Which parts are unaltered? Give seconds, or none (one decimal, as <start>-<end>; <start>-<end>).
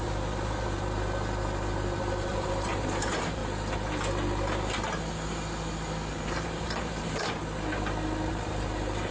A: 3.4-6.1; 7.4-8.3